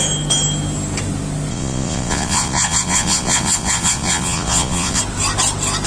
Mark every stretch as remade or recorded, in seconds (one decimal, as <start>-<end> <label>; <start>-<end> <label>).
0.0-1.5 recorded; 1.5-5.0 remade; 5.0-5.9 recorded